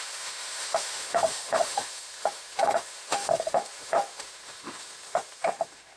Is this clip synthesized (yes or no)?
yes